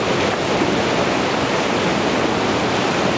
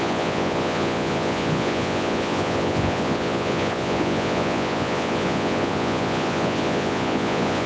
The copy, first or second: second